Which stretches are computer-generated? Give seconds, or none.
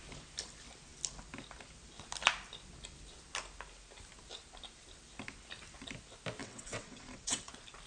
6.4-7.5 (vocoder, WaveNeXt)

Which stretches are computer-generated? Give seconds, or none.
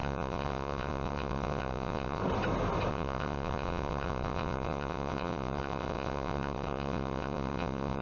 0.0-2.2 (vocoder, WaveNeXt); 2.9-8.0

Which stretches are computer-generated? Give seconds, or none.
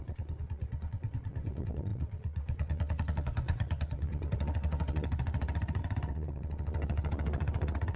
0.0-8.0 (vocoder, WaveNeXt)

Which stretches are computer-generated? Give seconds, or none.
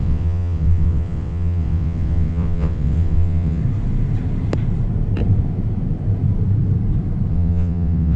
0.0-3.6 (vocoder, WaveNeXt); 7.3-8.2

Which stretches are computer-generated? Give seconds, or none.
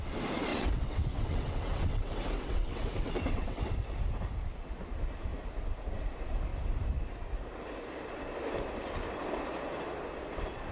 0.5-3.6 (vocoder, WaveNeXt)